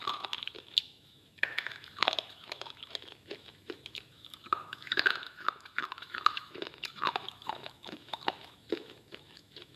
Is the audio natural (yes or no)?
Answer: no